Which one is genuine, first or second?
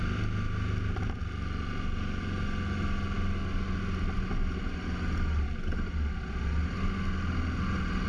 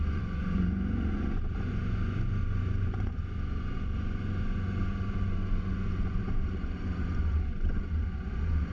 first